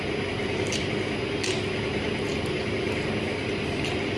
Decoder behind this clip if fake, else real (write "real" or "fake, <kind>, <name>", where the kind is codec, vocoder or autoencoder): real